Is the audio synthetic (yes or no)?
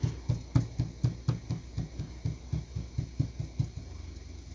no